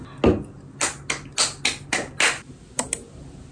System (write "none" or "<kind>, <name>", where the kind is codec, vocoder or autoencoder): none